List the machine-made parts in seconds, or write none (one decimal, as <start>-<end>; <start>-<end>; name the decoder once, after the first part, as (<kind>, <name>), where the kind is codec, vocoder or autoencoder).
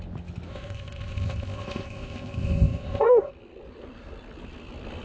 0.5-3.3 (codec, ZipCodec)